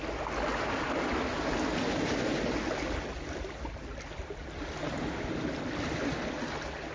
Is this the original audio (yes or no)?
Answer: yes